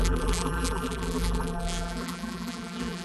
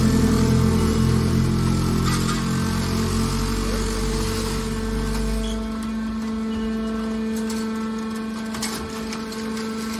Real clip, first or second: second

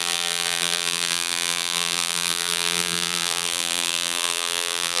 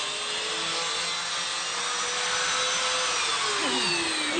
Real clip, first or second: second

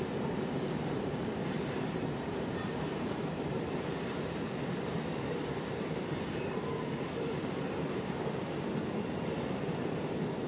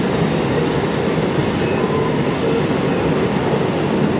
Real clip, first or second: second